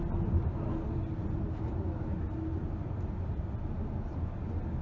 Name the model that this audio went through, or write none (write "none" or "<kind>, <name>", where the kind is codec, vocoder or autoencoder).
none